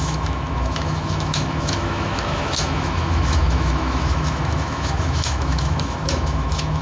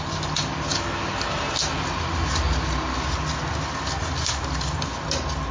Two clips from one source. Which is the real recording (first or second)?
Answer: second